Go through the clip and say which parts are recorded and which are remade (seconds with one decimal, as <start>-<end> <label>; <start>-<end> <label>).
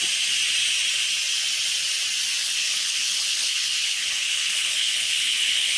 0.0-2.4 recorded; 2.4-5.8 remade